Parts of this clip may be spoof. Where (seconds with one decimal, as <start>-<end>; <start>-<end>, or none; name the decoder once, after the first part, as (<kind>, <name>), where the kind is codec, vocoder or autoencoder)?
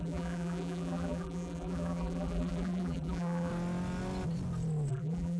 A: 0.0-3.5 (vocoder, BigVGAN v2); 4.9-5.4